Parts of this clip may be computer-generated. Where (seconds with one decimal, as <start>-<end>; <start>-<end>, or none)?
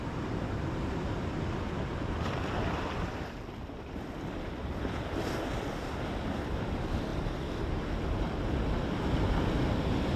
none